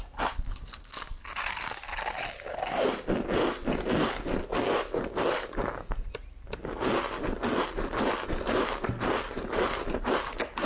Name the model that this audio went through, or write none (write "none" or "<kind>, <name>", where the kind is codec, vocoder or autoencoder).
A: none